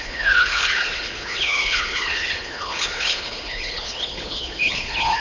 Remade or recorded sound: remade